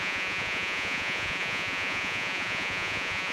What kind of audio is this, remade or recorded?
remade